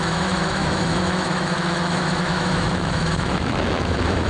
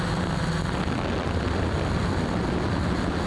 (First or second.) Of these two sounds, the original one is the second